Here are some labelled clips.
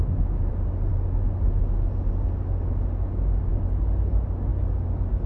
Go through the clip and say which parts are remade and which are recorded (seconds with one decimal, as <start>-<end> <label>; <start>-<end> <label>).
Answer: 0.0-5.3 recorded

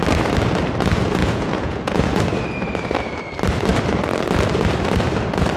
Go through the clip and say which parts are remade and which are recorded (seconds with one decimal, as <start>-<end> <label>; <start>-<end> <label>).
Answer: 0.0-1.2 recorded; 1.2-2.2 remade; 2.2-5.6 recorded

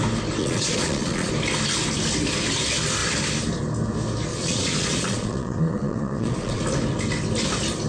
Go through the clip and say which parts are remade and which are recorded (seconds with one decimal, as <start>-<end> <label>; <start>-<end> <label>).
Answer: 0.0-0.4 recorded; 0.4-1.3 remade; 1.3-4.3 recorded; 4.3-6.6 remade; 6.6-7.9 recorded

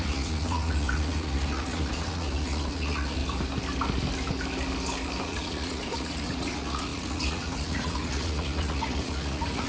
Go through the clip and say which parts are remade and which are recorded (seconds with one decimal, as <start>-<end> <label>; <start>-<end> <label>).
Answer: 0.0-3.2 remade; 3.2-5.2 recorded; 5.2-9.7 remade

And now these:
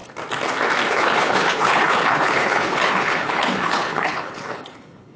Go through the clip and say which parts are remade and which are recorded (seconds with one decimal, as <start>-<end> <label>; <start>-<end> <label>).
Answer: 0.0-0.9 recorded; 0.9-5.2 remade